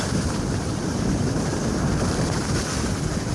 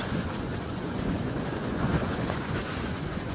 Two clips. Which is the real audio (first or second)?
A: first